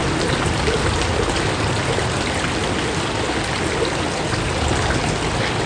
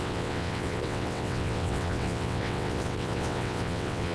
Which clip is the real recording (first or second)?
first